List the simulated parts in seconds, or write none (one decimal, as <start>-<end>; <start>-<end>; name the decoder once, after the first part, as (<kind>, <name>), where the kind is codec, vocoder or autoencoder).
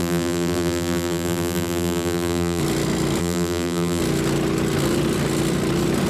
0.0-2.6 (vocoder, BigVGAN v2); 3.2-4.0